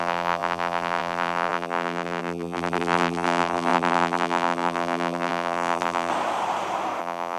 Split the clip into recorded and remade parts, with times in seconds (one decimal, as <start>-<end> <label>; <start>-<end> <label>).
0.0-6.1 remade; 6.1-7.0 recorded; 7.0-7.4 remade